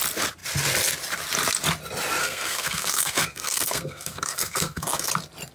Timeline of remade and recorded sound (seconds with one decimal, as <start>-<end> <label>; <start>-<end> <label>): 0.0-2.2 recorded; 2.2-5.1 remade; 5.1-5.5 recorded